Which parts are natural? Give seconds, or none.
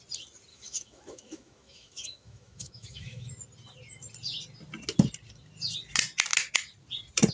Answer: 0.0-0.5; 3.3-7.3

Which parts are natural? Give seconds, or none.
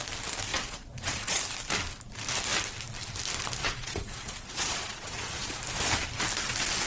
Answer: 0.0-0.5; 1.4-3.6; 5.6-6.9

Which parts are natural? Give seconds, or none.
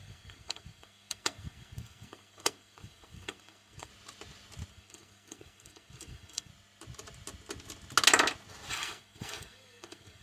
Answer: 3.9-4.7; 6.5-8.7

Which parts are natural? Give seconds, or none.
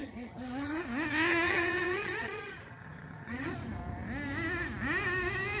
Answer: 0.8-1.3; 3.5-5.6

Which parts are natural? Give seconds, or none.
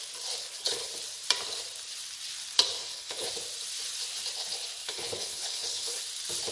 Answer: 0.0-0.4; 0.9-2.8; 3.3-4.8; 6.0-6.5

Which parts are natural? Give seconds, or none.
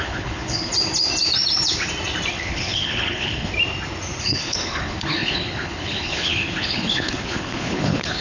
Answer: 0.7-2.3; 3.5-4.2